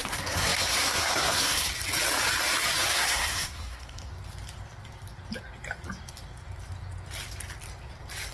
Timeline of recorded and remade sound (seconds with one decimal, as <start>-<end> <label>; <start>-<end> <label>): 0.0-1.7 remade; 1.7-2.9 recorded; 2.9-4.1 remade; 4.1-8.3 recorded